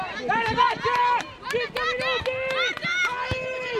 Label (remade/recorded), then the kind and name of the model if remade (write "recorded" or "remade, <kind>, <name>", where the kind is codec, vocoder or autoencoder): recorded